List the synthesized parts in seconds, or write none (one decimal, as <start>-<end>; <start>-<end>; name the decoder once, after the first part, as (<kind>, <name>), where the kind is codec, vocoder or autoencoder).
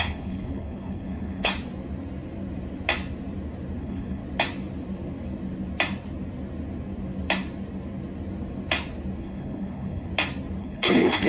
0.0-1.5 (codec, HILCodec); 3.8-4.2; 9.2-10.1; 10.6-11.3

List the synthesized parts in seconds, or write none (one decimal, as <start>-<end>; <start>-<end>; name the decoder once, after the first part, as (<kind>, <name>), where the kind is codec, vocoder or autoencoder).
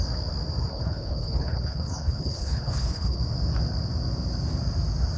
0.7-3.2 (codec, HILCodec)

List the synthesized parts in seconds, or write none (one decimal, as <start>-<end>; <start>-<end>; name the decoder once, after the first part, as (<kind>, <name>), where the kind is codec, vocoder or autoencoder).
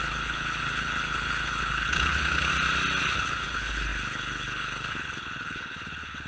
0.0-2.5 (codec, HILCodec); 3.0-6.3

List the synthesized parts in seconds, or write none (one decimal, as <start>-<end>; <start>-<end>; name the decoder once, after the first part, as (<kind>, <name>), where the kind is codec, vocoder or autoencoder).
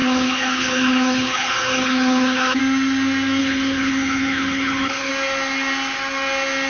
0.0-2.6 (codec, HILCodec); 3.4-5.1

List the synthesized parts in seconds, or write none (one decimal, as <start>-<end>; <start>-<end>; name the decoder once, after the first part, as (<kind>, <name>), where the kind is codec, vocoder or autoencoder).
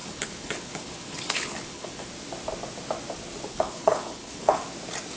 0.0-2.1 (codec, HILCodec); 3.5-4.6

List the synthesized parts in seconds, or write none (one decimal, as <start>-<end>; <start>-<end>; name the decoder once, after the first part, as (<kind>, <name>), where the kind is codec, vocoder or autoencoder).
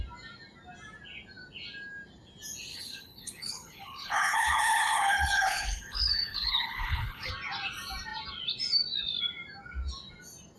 2.7-7.3 (codec, HILCodec)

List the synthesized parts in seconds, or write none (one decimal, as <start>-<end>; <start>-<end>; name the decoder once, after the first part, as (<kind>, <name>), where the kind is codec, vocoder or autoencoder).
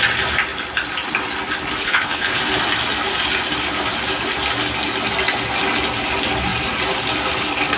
1.8-2.4 (codec, HILCodec)